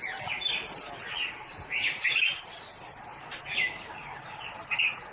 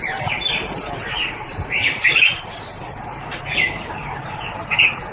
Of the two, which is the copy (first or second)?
second